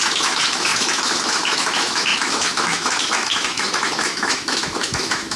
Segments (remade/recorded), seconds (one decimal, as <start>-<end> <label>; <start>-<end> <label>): 0.0-5.4 remade

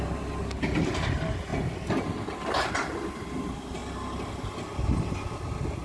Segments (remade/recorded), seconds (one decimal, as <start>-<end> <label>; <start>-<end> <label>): 0.0-5.8 recorded

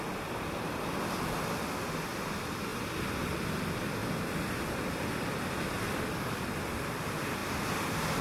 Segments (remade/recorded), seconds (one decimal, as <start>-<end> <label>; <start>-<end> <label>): 0.0-8.2 recorded

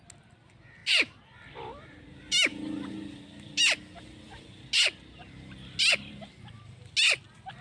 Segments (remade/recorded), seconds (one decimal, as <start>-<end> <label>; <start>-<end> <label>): 0.0-7.6 recorded

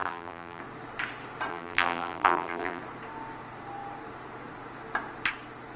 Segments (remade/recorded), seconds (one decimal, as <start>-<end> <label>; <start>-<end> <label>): 0.0-0.6 remade; 0.6-1.5 recorded; 1.5-2.8 remade; 2.8-5.8 recorded

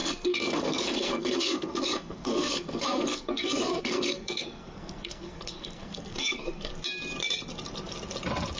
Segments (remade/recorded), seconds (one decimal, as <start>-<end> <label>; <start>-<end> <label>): 0.0-6.7 remade; 6.7-8.6 recorded

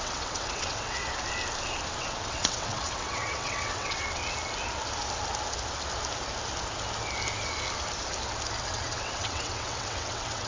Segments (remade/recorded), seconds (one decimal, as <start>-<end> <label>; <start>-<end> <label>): 0.0-1.0 remade; 1.0-2.0 recorded; 2.0-4.2 remade; 4.2-8.6 recorded; 8.6-10.5 remade